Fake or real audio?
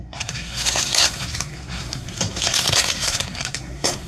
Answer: fake